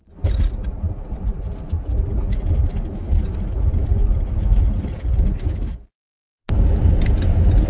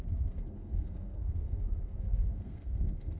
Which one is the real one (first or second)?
first